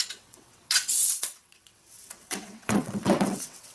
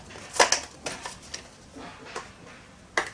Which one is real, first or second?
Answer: second